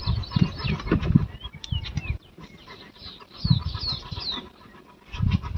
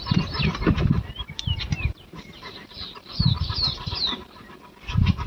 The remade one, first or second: second